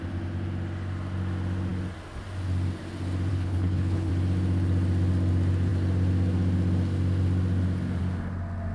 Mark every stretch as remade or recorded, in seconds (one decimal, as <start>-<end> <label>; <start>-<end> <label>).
0.0-3.3 recorded; 3.3-4.1 remade; 4.1-8.7 recorded